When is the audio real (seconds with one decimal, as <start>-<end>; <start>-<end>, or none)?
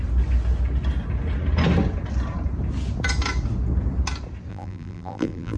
0.0-4.5